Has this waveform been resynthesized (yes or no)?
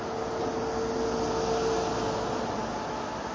no